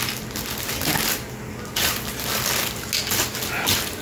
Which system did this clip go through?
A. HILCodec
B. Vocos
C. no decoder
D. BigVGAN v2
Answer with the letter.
C